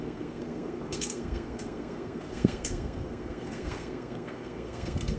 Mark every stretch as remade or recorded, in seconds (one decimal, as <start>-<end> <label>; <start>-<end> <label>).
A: 0.0-5.2 remade